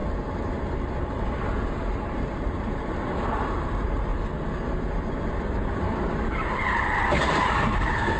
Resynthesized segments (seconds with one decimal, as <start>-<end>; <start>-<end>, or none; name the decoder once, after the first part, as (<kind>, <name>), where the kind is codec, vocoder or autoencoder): 1.4-4.1 (vocoder, BigVGAN v2); 5.8-8.2

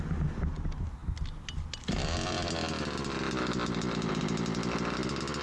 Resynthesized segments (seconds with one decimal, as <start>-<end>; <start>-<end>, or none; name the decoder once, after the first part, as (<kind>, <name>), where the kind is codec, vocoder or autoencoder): none

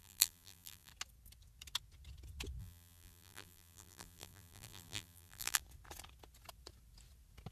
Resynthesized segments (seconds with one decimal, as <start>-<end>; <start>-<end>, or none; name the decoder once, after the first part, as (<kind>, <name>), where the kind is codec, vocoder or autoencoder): 0.0-0.9 (vocoder, BigVGAN v2); 2.6-5.6

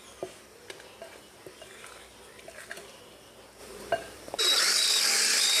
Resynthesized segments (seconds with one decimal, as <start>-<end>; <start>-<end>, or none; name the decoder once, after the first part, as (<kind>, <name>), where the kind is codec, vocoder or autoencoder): 3.6-4.4 (vocoder, BigVGAN v2)

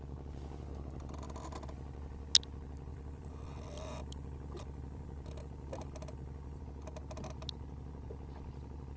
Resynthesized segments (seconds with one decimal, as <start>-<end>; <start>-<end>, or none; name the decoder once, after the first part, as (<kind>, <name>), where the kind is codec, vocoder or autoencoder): 2.9-6.6 (vocoder, BigVGAN v2)

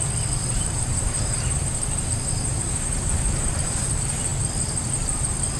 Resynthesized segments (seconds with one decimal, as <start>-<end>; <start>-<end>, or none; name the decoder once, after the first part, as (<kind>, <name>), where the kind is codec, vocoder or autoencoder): 0.4-3.8 (vocoder, BigVGAN v2)